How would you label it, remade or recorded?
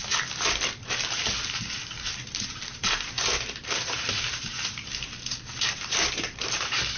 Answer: remade